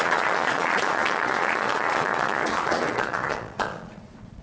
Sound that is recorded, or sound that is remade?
remade